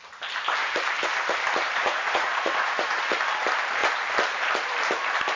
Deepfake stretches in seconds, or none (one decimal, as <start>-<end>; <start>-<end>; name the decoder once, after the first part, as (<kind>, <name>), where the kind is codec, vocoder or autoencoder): 1.8-3.0 (vocoder, Vocos)